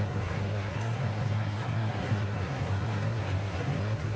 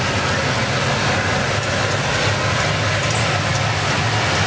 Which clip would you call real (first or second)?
second